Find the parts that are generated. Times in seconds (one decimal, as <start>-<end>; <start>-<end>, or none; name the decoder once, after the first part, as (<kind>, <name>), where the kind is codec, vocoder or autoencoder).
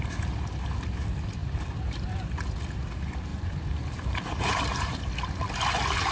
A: 1.4-2.3 (vocoder, BigVGAN v2); 3.3-5.1